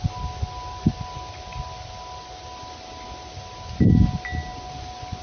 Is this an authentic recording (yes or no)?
yes